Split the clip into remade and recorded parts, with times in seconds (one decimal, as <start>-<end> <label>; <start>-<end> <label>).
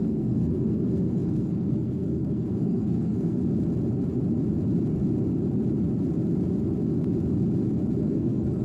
0.0-3.4 remade; 3.4-8.0 recorded; 8.0-8.6 remade